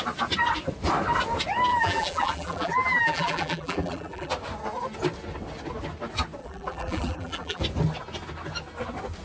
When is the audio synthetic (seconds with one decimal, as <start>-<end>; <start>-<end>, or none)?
1.7-4.3; 6.4-7.6